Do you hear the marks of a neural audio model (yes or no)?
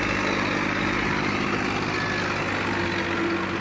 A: no